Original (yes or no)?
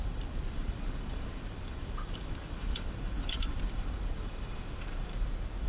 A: no